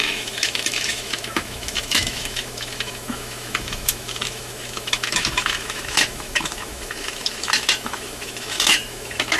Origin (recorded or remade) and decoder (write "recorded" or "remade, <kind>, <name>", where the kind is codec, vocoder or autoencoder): remade, autoencoder, DAC-VAE